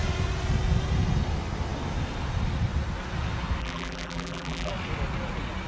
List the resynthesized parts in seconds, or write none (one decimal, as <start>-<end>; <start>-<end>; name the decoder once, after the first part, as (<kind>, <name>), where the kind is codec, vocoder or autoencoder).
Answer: 3.6-4.7 (vocoder, BigVGAN v2)